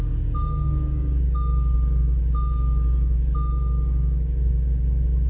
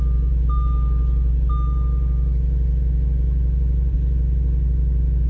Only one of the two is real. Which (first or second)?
second